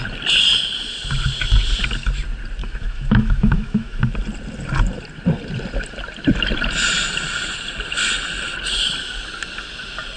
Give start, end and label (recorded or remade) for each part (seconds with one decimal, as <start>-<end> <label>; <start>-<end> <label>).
0.0-2.6 recorded; 2.6-4.0 remade; 4.0-10.2 recorded